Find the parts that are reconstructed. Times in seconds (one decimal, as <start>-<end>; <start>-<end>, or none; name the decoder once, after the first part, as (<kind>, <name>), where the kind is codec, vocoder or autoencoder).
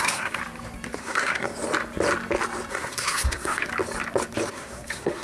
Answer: 0.0-0.4 (codec, SNAC); 1.0-1.5; 2.7-3.7; 4.5-5.2